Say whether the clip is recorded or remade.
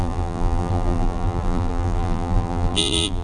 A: remade